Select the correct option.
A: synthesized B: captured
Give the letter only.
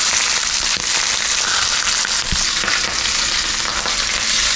B